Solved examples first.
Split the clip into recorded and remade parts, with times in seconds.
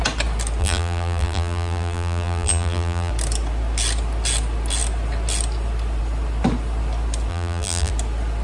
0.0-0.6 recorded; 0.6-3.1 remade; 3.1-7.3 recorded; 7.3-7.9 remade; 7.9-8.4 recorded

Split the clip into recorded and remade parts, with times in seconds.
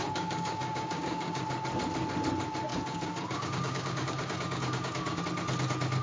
0.0-1.4 remade; 1.4-2.7 recorded; 2.7-5.2 remade; 5.2-6.0 recorded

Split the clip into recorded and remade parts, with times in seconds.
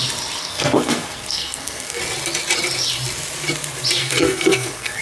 0.0-0.4 recorded; 0.4-2.0 remade; 2.0-4.0 recorded; 4.0-5.0 remade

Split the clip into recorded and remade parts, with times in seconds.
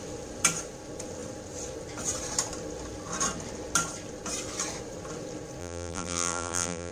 0.0-5.6 recorded; 5.6-6.9 remade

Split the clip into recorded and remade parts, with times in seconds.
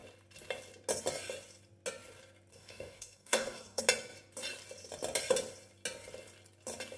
0.0-2.5 recorded; 2.5-3.8 remade; 3.8-7.0 recorded